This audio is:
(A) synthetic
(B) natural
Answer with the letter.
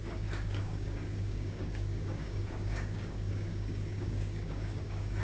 A